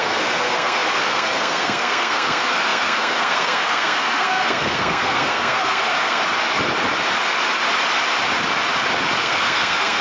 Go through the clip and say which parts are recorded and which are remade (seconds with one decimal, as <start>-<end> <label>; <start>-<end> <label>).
0.0-6.2 remade; 6.2-9.2 recorded; 9.2-10.0 remade